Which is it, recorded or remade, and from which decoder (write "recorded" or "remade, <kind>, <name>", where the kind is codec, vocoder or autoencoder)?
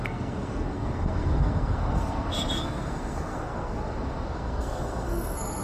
remade, codec, SNAC